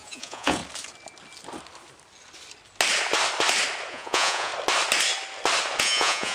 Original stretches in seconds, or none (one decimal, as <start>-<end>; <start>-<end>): 0.6-3.9; 4.5-5.8